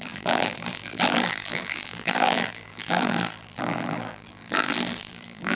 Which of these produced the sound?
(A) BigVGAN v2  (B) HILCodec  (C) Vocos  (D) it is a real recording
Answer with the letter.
A